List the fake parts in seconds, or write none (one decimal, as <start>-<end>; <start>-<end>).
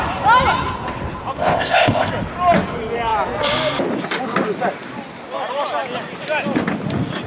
1.4-2.1